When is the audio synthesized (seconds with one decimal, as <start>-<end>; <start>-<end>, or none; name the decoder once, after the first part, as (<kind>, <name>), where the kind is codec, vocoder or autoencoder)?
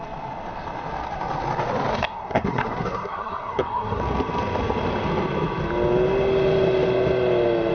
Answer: 1.9-4.0 (codec, SNAC)